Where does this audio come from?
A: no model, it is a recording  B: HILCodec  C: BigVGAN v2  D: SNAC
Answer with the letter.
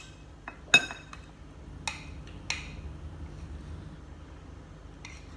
A